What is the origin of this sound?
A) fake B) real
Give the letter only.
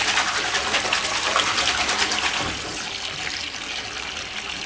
B